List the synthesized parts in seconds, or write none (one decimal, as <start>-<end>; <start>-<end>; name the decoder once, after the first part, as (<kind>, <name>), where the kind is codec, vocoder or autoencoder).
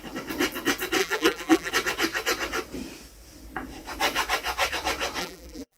1.0-1.7 (vocoder, BigVGAN v2); 5.2-5.8